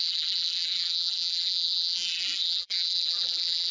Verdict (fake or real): fake